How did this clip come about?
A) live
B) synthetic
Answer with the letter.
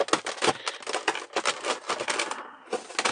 A